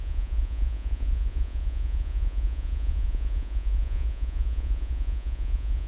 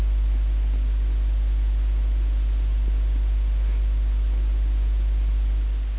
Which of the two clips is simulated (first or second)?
first